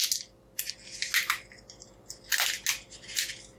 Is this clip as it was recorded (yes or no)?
yes